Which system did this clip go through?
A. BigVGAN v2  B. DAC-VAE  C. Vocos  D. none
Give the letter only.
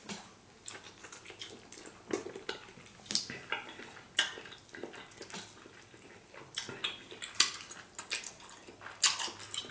D